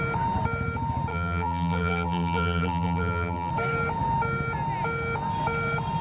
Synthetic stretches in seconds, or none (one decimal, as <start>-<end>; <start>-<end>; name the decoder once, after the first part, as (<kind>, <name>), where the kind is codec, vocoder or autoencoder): 1.1-3.5 (vocoder, BigVGAN v2)